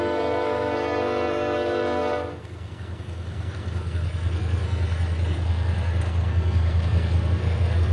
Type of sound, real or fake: fake